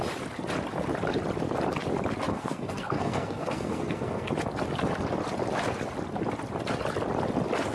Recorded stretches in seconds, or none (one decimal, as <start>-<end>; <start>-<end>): 0.0-2.3; 4.3-7.7